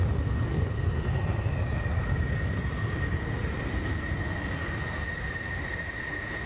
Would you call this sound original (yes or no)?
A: yes